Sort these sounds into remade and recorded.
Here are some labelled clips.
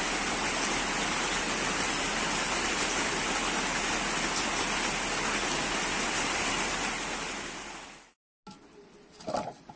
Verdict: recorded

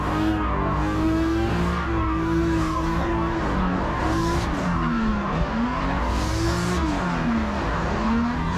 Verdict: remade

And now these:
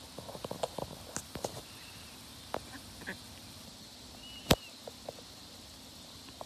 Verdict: recorded